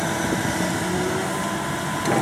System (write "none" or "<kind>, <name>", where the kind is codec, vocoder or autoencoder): none